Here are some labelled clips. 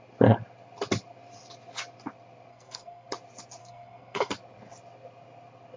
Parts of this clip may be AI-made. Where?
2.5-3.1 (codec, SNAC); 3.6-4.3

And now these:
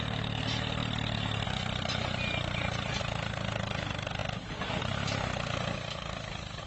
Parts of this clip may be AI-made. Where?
none

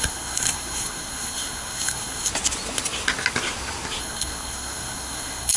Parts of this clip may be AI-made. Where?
0.0-2.3 (codec, SNAC); 4.0-5.6

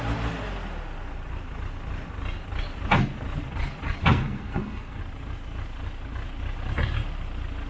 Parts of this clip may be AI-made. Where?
4.0-5.0 (codec, SNAC)